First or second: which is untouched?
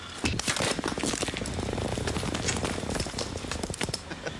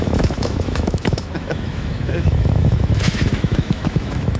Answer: first